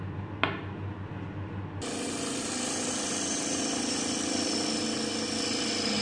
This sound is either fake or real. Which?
real